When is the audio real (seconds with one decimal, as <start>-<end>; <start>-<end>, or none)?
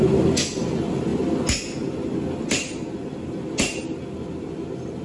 0.0-5.0